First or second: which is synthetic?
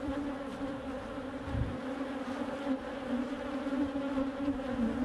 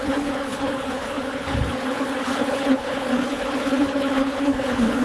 second